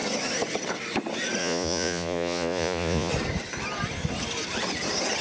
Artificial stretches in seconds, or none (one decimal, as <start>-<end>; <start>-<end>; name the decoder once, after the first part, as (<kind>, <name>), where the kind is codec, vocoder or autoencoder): 1.4-3.1 (vocoder, Vocos)